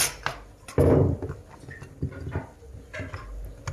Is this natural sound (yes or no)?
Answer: yes